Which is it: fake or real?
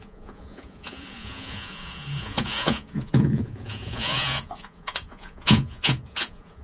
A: fake